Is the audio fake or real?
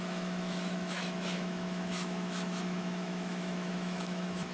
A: fake